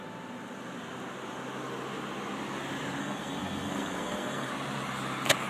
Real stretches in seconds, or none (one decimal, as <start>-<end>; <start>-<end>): 0.0-3.0; 4.5-5.5